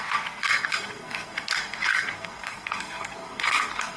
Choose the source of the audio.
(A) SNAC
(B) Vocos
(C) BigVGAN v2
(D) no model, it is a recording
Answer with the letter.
A